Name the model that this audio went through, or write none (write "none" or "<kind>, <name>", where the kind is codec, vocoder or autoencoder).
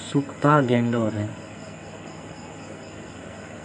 codec, SNAC